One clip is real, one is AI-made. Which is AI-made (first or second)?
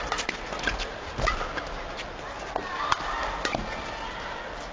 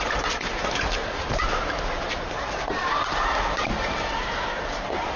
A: second